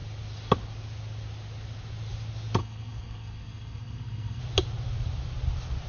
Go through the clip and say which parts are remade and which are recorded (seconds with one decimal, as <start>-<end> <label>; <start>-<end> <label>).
0.0-2.6 recorded; 2.6-4.4 remade; 4.4-5.9 recorded